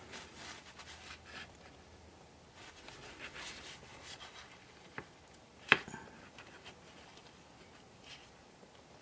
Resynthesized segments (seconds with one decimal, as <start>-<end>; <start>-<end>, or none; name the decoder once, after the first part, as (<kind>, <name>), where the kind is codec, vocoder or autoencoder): 3.9-4.6 (vocoder, BigVGAN v2)